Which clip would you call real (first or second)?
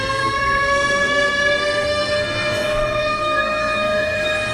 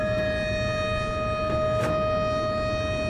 second